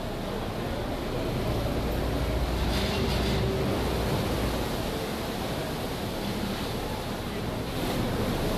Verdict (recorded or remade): recorded